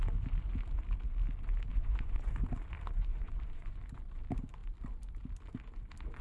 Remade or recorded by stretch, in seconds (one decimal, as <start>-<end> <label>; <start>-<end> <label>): 0.0-1.7 recorded; 1.7-2.3 remade; 2.3-3.1 recorded; 3.1-3.8 remade; 3.8-6.2 recorded